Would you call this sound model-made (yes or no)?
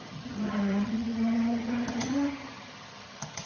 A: yes